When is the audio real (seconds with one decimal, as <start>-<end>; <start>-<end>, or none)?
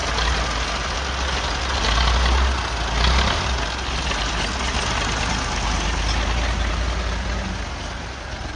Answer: 0.0-8.6